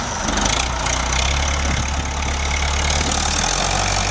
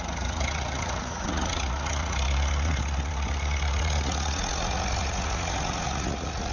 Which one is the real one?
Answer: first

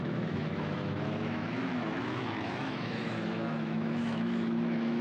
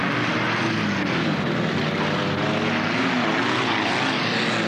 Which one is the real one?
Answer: second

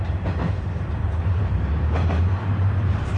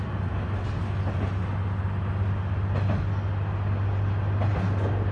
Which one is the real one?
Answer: second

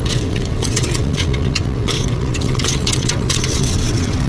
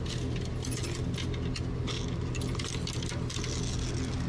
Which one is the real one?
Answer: second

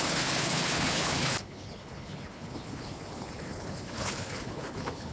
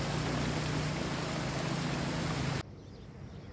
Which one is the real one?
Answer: second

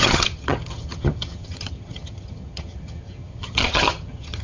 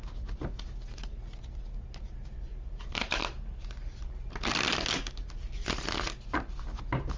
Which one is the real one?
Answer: second